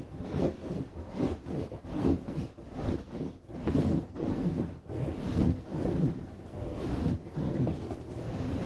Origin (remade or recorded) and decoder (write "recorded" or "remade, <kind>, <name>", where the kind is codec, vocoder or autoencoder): remade, codec, SNAC